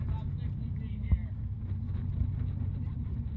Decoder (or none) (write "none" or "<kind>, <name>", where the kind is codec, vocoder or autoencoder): none